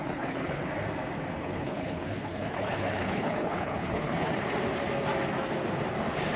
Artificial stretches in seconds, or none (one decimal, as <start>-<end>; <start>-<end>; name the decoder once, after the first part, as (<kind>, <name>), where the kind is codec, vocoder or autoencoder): 0.0-0.6 (codec, HILCodec); 1.4-4.4